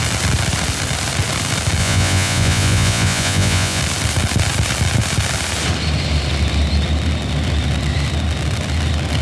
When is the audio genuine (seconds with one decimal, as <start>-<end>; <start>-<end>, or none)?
0.0-1.8; 3.8-9.2